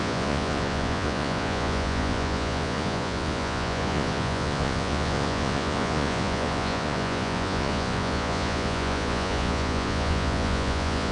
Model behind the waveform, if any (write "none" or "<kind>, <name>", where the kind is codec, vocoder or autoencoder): vocoder, Vocos